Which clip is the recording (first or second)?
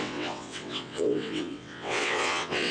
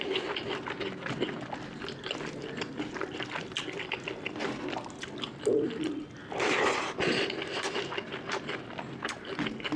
second